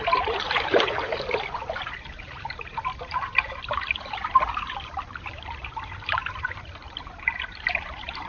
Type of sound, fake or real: fake